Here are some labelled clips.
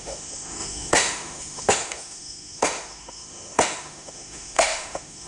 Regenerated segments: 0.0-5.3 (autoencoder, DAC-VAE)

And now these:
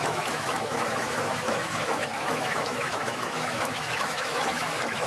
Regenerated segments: 0.0-5.1 (autoencoder, DAC-VAE)

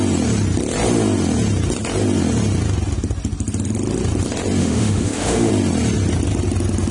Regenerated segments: 4.6-5.5 (autoencoder, DAC-VAE)

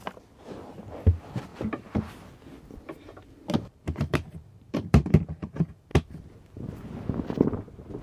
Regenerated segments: none

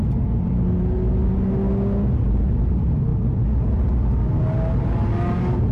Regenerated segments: none

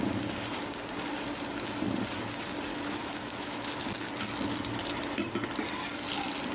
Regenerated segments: 2.7-3.8 (autoencoder, DAC-VAE)